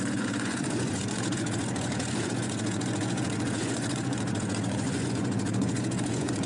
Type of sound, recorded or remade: remade